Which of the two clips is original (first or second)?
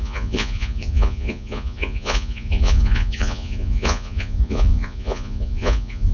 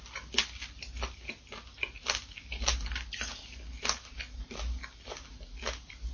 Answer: second